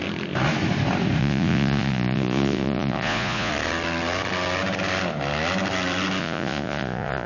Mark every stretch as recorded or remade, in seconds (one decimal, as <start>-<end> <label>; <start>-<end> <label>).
0.0-1.2 recorded; 1.2-3.5 remade; 3.5-6.2 recorded; 6.2-7.3 remade